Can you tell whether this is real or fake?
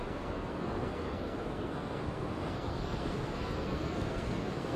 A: fake